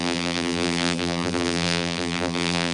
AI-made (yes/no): yes